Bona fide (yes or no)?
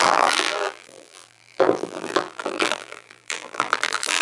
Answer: no